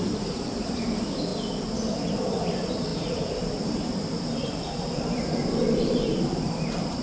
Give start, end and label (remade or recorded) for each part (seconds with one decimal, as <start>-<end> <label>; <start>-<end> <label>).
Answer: 0.0-1.3 remade; 1.3-2.3 recorded; 2.3-7.0 remade